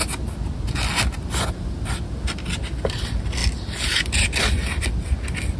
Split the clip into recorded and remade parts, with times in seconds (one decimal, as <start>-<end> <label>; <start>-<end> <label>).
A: 0.0-5.6 recorded